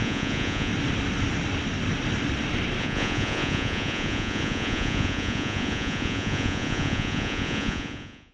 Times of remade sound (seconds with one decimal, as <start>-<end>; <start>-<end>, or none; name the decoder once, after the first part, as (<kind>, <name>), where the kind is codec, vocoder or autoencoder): 0.0-0.7 (vocoder, Vocos); 2.8-8.3